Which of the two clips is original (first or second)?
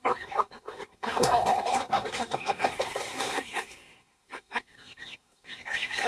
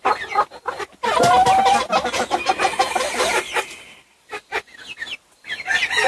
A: second